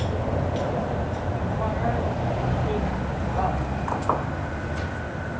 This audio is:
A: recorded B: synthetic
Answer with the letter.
A